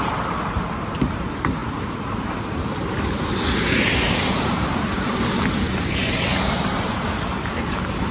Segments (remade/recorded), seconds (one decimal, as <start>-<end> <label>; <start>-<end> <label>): 0.0-8.1 remade